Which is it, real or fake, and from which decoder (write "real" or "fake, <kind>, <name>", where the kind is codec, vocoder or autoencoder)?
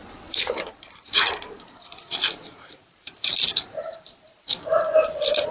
fake, vocoder, BigVGAN v2